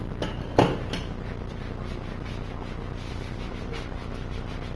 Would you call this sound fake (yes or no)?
no